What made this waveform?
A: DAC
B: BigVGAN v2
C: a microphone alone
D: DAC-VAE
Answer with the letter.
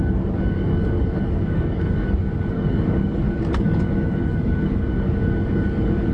A